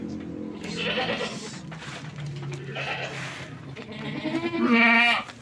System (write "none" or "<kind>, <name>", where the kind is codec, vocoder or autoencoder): none